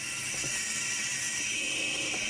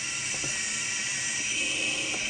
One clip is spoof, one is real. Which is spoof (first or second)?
second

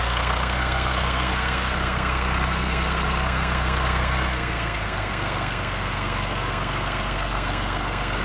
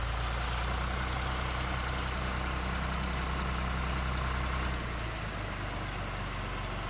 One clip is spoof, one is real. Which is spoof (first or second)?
first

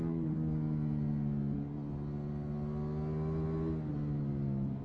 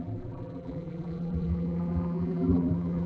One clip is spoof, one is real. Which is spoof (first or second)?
second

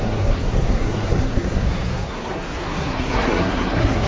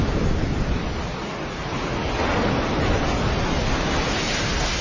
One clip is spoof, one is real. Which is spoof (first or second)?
first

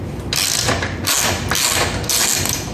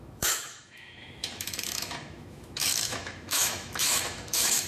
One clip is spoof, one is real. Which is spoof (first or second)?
second